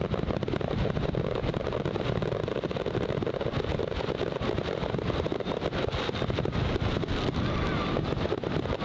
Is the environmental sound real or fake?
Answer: real